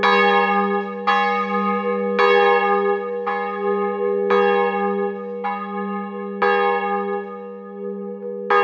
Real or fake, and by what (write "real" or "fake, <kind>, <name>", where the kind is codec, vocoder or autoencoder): real